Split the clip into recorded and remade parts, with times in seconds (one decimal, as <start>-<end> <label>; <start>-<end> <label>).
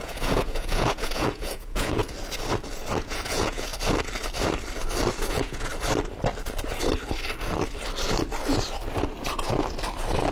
0.0-2.0 remade; 2.0-3.0 recorded; 3.0-3.7 remade; 3.7-5.3 recorded; 5.3-5.7 remade; 5.7-10.3 recorded